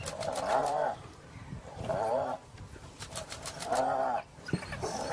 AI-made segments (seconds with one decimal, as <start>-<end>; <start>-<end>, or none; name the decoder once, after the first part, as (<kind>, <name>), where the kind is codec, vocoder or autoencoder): 0.6-3.7 (vocoder, BigVGAN v2)